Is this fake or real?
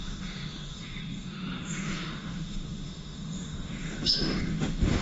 fake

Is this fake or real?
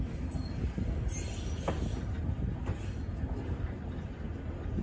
real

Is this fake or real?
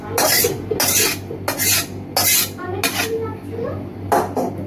real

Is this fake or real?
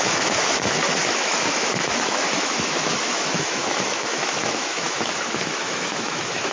fake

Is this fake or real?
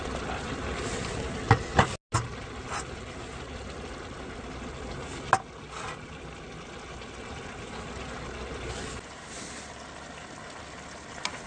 real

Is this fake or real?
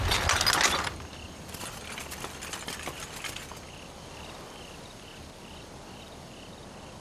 real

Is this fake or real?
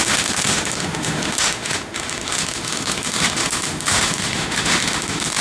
fake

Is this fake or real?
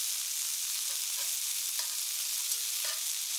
real